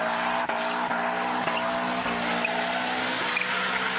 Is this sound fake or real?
real